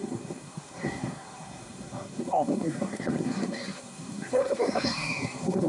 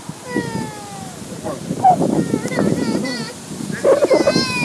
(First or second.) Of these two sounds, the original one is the second